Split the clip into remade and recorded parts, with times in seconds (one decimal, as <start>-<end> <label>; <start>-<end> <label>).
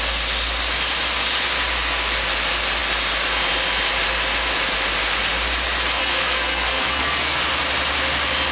0.0-6.0 recorded; 6.0-7.4 remade; 7.4-8.5 recorded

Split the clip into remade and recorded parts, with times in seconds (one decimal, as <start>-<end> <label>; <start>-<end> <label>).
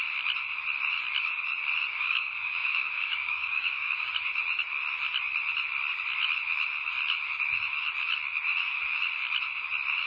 0.0-1.9 recorded; 1.9-4.1 remade; 4.1-10.1 recorded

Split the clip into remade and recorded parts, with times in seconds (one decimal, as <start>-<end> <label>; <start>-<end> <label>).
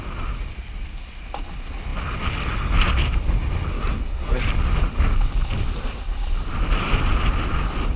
0.0-3.7 recorded; 3.7-4.4 remade; 4.4-8.0 recorded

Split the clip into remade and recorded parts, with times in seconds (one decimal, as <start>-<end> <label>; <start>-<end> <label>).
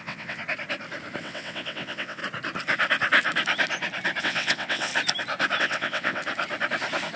0.0-0.4 remade; 0.4-1.2 recorded; 1.2-2.2 remade; 2.2-4.2 recorded; 4.2-4.9 remade; 4.9-5.6 recorded; 5.6-6.2 remade; 6.2-7.2 recorded